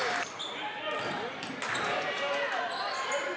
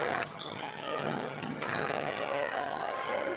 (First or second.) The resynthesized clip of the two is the second